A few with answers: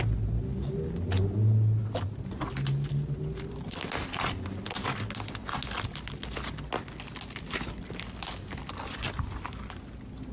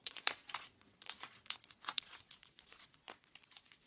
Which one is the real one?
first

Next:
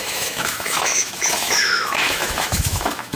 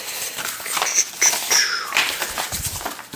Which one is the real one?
second